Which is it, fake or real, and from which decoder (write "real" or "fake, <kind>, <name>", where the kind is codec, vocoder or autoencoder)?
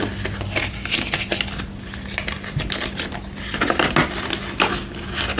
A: real